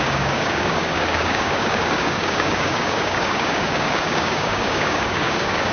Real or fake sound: fake